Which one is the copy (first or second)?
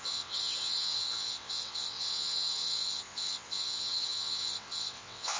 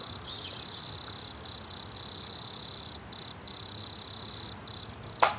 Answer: first